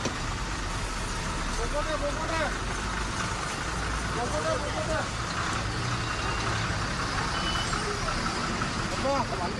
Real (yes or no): yes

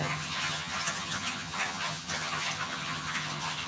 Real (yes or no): no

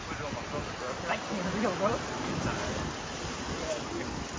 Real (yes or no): yes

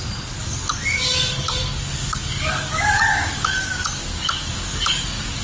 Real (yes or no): no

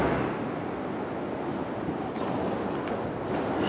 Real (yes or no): yes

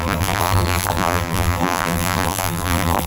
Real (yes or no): no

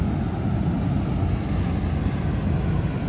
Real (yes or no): yes